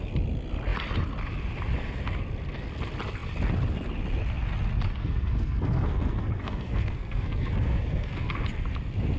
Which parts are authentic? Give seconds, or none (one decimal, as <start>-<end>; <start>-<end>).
0.0-5.0; 8.4-9.2